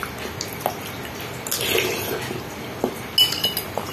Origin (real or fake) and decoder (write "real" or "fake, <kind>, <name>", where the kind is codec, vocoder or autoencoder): real